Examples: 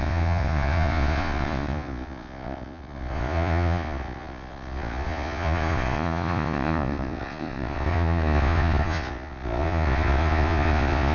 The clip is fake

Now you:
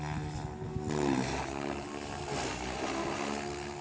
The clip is real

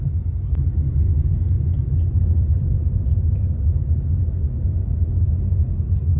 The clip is real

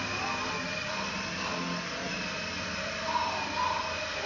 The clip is real